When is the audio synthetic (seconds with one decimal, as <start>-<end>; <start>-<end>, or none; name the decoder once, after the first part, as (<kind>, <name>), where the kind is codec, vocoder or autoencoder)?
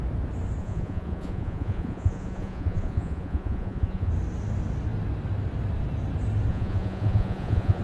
0.6-4.1 (vocoder, Vocos); 6.5-7.8